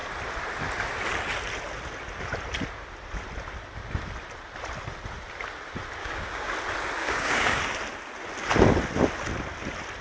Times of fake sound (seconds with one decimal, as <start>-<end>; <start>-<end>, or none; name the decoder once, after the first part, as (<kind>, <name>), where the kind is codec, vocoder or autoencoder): 6.0-6.5 (codec, DAC); 7.0-7.6